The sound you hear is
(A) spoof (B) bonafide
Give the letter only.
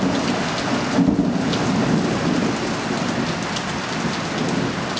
B